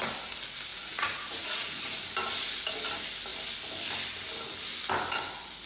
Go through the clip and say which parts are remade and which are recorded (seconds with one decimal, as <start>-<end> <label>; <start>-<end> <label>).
0.0-0.7 recorded; 0.7-1.8 remade; 1.8-5.7 recorded